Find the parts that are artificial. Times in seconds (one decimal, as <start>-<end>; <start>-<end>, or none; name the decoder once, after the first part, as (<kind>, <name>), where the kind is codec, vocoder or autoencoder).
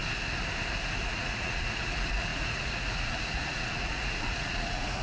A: 1.0-5.0 (vocoder, Vocos)